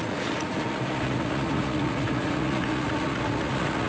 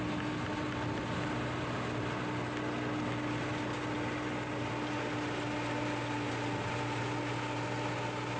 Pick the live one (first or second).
second